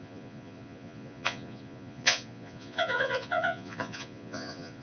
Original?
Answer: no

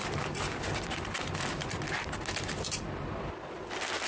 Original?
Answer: yes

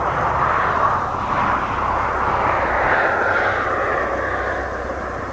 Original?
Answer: yes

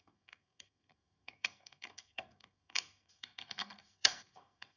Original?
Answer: no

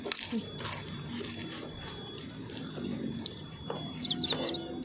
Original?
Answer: yes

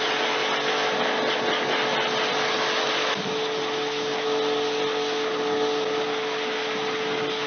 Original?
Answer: yes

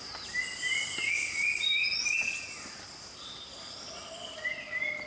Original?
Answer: yes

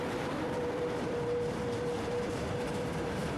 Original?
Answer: no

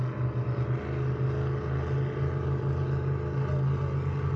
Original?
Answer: yes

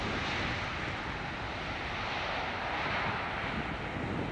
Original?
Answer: yes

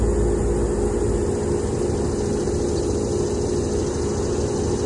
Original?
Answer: yes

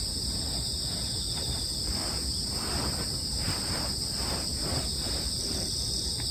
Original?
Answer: yes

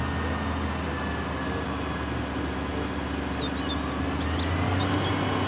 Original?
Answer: yes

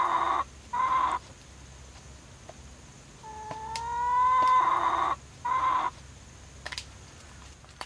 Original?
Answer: yes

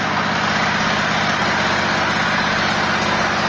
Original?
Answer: yes